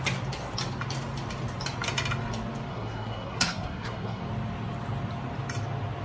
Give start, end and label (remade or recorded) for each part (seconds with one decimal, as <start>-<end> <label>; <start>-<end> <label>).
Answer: 0.0-2.7 recorded; 2.7-4.2 remade; 4.2-6.0 recorded